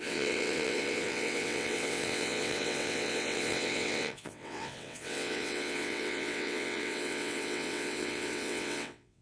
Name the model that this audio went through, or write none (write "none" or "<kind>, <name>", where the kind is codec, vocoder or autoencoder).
vocoder, WaveNeXt